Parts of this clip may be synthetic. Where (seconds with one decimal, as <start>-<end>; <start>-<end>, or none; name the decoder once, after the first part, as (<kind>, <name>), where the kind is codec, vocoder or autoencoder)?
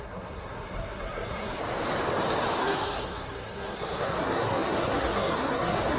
0.0-1.6 (codec, SNAC); 2.6-6.0